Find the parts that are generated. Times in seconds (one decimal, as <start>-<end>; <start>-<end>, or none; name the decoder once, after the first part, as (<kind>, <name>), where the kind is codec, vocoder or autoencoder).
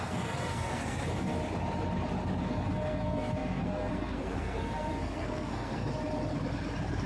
0.0-1.4 (codec, SNAC); 2.4-5.8